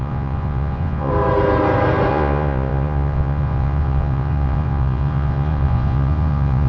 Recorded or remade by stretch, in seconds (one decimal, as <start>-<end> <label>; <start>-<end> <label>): 0.0-1.1 remade; 1.1-2.1 recorded; 2.1-6.7 remade